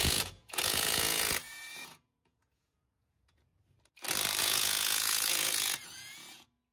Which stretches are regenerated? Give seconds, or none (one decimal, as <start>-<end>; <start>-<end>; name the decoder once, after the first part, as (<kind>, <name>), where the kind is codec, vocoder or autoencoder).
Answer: 0.0-3.5 (vocoder, Vocos); 4.4-6.7